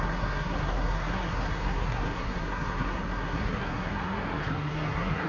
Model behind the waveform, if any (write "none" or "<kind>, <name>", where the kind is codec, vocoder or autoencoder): codec, SNAC